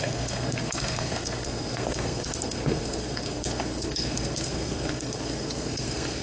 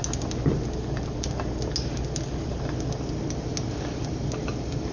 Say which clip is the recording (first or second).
second